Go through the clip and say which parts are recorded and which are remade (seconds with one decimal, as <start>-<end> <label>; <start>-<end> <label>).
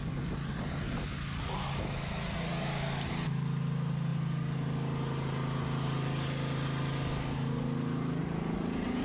0.0-9.0 recorded